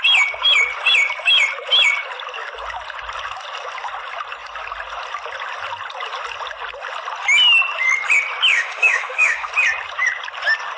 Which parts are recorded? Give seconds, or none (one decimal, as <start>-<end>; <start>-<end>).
0.0-8.5; 9.5-10.8